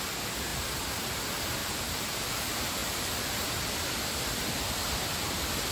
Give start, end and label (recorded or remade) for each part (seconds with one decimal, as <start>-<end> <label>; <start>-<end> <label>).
0.0-1.6 recorded; 1.6-2.4 remade; 2.4-2.8 recorded; 2.8-3.5 remade; 3.5-5.7 recorded

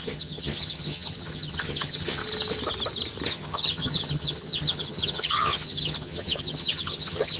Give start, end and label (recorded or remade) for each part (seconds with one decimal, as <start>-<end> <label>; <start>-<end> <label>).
0.0-2.2 remade; 2.2-3.3 recorded; 3.3-7.4 remade

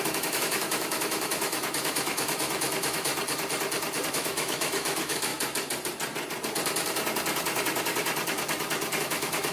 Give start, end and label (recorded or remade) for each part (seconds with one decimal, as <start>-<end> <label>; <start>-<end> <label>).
0.0-3.1 remade; 3.1-4.1 recorded; 4.1-5.3 remade; 5.3-9.0 recorded; 9.0-9.5 remade

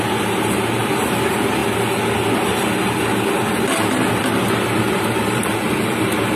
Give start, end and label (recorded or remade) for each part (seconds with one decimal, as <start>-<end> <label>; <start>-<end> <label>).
0.0-6.4 recorded

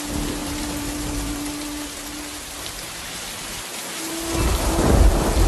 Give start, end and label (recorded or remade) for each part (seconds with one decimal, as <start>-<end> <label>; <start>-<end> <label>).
0.0-0.4 recorded; 0.4-3.0 remade; 3.0-3.5 recorded; 3.5-4.9 remade; 4.9-5.5 recorded